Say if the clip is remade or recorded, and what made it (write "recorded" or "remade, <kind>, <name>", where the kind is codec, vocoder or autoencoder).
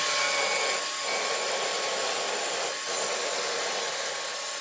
recorded